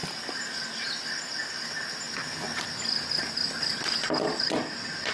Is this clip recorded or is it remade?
recorded